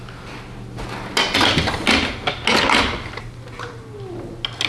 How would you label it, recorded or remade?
recorded